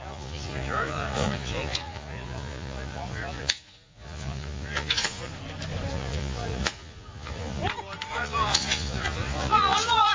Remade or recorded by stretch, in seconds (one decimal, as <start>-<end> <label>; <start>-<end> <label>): 0.0-5.3 remade; 5.3-5.9 recorded; 5.9-7.6 remade; 7.6-8.1 recorded; 8.1-10.1 remade